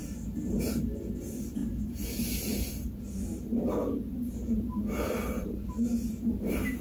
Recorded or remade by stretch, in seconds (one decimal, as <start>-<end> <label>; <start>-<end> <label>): 0.0-6.8 remade